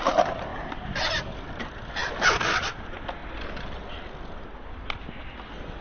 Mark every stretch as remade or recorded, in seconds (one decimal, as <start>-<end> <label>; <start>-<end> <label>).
0.0-5.8 recorded